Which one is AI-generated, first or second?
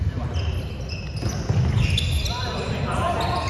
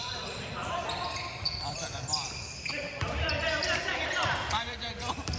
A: second